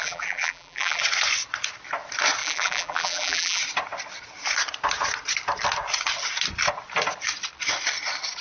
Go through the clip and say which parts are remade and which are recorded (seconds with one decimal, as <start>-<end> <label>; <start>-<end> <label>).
0.0-1.0 remade; 1.0-2.4 recorded; 2.4-3.6 remade; 3.6-8.4 recorded